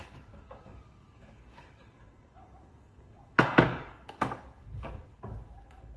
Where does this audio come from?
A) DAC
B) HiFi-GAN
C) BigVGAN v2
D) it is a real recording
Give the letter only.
A